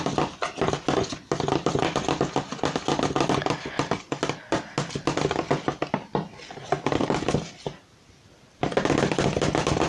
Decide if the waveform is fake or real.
real